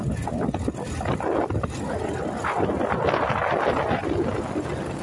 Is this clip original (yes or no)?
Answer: yes